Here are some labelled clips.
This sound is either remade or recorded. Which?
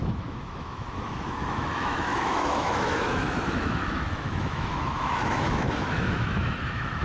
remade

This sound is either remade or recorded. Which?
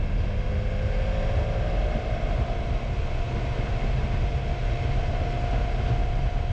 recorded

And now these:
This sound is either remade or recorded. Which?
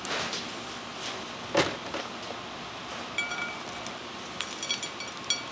recorded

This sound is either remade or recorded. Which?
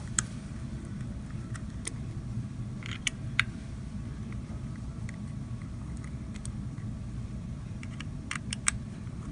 remade